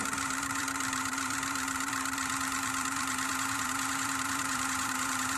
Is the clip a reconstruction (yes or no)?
yes